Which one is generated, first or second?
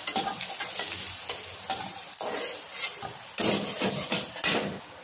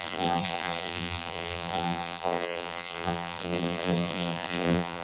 second